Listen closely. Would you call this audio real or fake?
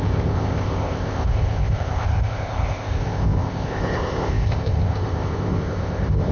fake